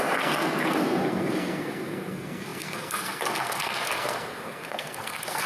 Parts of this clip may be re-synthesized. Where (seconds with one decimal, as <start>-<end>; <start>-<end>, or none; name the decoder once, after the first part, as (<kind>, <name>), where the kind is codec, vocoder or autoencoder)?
0.0-5.5 (codec, SNAC)